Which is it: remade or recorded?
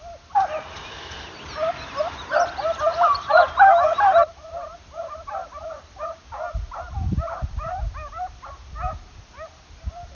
remade